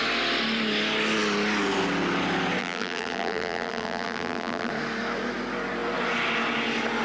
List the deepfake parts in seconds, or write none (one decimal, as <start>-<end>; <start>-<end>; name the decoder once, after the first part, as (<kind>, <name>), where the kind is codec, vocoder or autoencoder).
2.6-4.7 (vocoder, BigVGAN v2)